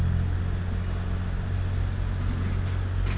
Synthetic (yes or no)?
no